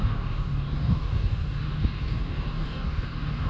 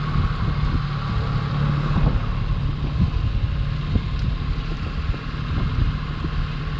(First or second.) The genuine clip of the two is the second